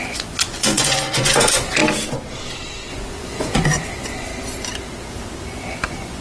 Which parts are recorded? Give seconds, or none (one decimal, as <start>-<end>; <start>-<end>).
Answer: 1.8-2.9; 4.3-5.5